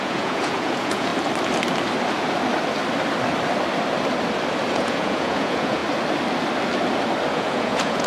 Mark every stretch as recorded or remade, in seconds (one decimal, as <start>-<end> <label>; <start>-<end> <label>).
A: 0.0-1.1 remade; 1.1-4.7 recorded; 4.7-5.8 remade; 5.8-7.3 recorded; 7.3-8.1 remade